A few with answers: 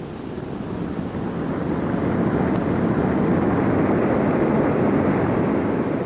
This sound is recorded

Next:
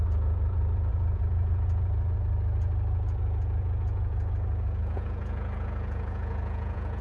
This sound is remade